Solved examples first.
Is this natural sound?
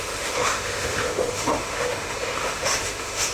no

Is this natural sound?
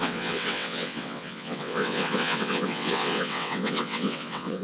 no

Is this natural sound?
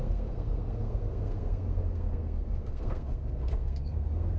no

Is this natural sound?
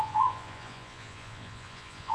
no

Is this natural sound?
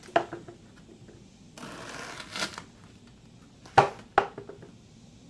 yes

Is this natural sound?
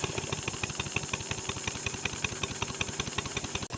yes